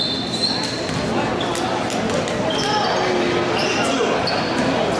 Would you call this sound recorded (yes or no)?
yes